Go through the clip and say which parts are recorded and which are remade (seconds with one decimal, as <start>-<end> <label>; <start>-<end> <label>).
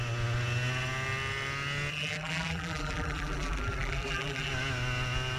0.0-1.9 recorded; 1.9-4.5 remade; 4.5-5.4 recorded